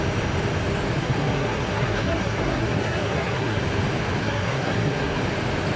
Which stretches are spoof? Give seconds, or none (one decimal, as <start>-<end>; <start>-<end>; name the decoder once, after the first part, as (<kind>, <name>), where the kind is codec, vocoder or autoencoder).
1.0-3.6 (codec, SNAC); 4.2-5.2